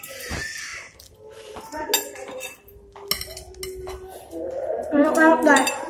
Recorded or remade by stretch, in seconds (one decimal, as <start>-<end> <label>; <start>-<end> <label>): 0.0-0.7 remade; 0.7-4.2 recorded; 4.2-5.9 remade